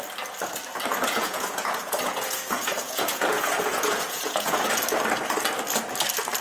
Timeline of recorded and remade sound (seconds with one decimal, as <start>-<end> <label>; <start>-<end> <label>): 0.0-0.9 recorded; 0.9-4.7 remade; 4.7-6.4 recorded